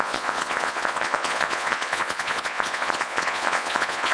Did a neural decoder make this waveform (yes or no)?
yes